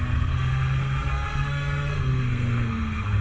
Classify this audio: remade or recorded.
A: remade